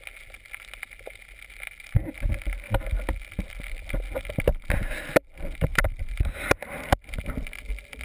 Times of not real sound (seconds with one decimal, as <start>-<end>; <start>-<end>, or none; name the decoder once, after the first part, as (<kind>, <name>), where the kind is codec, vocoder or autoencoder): 5.7-7.3 (vocoder, BigVGAN v2)